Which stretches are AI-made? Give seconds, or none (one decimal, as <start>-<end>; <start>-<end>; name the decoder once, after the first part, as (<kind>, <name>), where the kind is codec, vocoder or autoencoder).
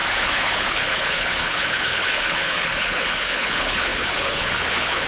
0.0-5.1 (codec, HILCodec)